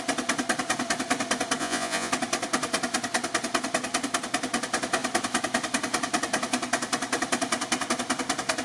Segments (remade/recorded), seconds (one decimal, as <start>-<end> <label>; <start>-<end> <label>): 0.0-1.6 recorded; 1.6-2.1 remade; 2.1-8.6 recorded